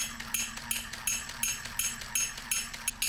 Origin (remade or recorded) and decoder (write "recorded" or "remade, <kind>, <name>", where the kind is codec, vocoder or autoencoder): recorded